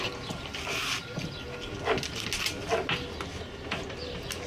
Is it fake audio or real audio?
real